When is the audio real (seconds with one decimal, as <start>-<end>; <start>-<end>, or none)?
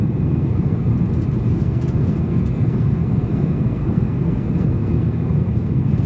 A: 0.9-1.5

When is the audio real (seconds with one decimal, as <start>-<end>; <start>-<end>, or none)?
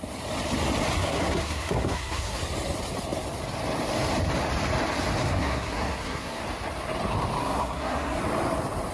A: 0.0-1.0; 2.4-5.2; 6.4-7.4; 8.2-8.9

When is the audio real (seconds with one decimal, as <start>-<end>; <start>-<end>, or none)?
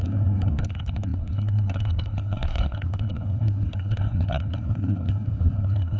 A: none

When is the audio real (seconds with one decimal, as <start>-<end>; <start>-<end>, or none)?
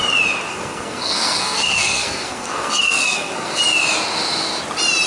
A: 0.0-0.5; 3.6-5.1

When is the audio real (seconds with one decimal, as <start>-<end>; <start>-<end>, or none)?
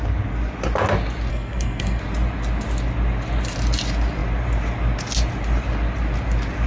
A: 0.0-1.3; 2.0-6.7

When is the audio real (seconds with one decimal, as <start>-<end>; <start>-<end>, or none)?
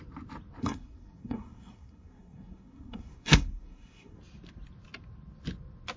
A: 0.0-0.6; 4.2-6.0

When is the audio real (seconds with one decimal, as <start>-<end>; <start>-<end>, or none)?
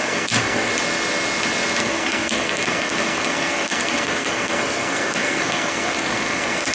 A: 0.7-1.8